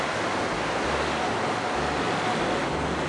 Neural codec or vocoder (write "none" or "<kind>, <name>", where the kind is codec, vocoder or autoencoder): none